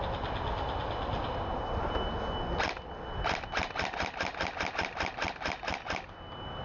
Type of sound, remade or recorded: recorded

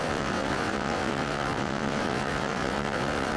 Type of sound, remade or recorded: remade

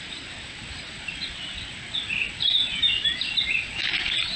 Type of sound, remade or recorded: remade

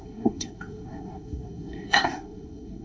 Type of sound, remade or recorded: remade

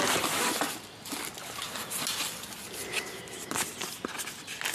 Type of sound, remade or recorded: recorded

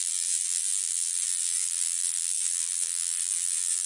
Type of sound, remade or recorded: remade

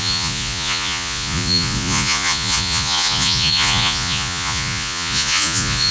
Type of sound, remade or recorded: remade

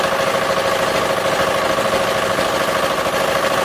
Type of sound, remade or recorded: recorded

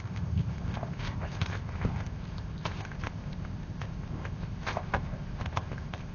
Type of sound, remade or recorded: remade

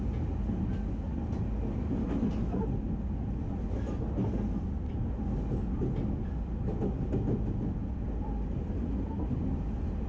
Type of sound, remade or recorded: recorded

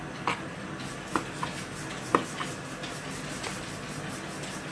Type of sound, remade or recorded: recorded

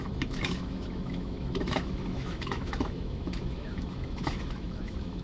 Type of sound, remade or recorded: remade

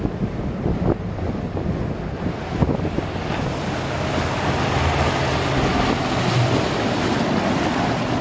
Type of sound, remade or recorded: recorded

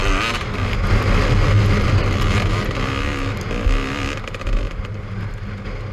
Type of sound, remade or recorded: recorded